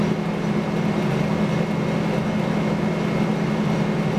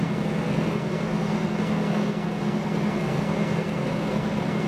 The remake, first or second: second